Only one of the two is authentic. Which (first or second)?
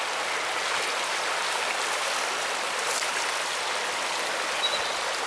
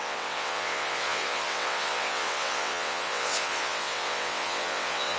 first